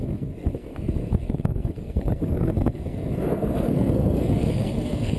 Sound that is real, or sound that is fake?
fake